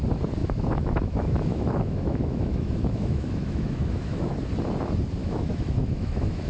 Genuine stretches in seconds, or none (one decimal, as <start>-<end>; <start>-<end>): 0.0-0.4; 4.3-5.2